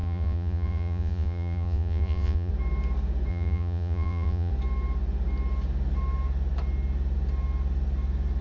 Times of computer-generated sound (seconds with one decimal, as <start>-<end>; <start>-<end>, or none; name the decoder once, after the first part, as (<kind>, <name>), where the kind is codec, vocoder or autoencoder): 0.0-2.5 (vocoder, Vocos); 3.3-4.5